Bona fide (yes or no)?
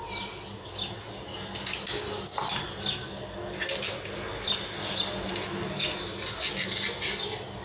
yes